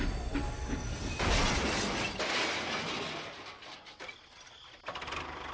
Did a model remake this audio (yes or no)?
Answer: no